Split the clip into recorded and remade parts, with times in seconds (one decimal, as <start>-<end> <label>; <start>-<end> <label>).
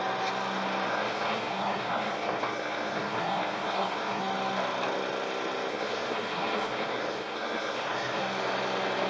0.0-0.9 recorded; 0.9-4.2 remade; 4.2-5.7 recorded; 5.7-8.2 remade; 8.2-9.1 recorded